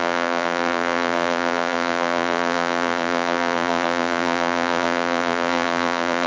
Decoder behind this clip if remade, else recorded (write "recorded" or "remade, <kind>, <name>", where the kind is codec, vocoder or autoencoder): remade, vocoder, BigVGAN v2